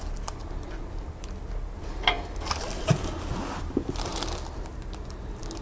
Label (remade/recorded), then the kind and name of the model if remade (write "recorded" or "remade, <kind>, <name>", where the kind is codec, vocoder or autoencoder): recorded